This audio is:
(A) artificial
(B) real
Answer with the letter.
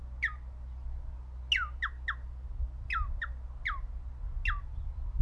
B